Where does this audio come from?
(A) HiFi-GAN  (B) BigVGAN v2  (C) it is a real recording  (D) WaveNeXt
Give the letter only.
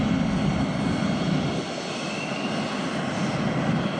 C